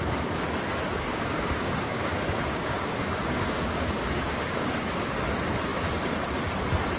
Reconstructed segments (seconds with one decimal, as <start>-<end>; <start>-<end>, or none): 0.9-5.1